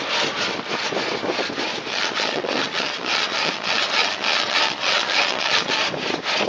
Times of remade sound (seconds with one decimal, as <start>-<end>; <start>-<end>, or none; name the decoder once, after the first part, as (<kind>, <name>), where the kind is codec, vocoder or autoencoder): 1.9-5.8 (vocoder, Vocos)